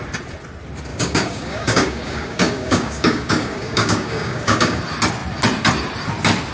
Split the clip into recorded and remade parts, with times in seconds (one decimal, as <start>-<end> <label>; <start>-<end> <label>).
0.0-0.9 recorded; 0.9-4.8 remade; 4.8-6.5 recorded